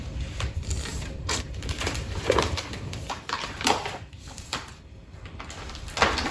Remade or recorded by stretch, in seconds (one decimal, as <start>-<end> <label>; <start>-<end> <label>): 0.0-0.9 recorded; 0.9-4.7 remade; 4.7-6.3 recorded